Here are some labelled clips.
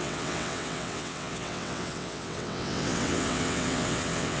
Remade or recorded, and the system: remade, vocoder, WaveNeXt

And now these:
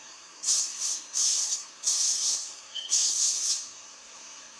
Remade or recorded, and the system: remade, codec, SNAC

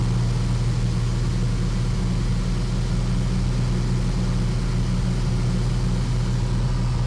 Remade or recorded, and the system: recorded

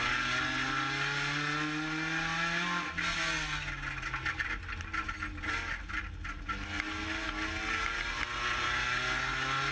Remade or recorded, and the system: recorded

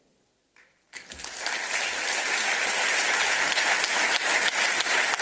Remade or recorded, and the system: recorded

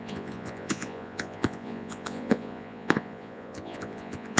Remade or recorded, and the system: remade, vocoder, Vocos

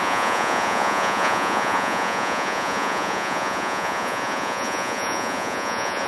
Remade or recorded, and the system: remade, vocoder, Vocos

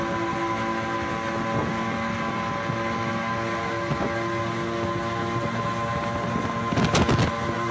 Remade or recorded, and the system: recorded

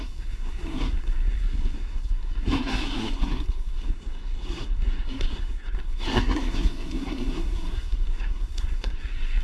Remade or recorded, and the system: remade, codec, SNAC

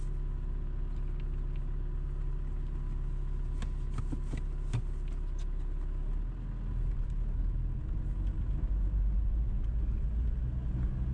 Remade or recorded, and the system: recorded